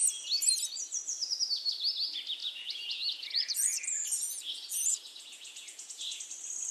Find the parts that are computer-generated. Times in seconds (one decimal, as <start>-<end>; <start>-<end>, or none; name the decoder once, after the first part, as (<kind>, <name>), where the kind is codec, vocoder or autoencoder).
2.4-6.2 (vocoder, Vocos)